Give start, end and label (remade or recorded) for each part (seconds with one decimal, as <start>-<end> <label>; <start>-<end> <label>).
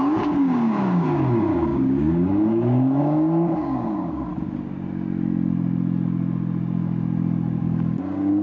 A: 0.0-4.3 remade; 4.3-7.6 recorded; 7.6-8.4 remade